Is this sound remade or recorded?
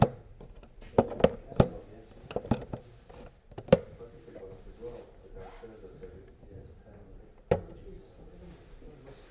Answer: recorded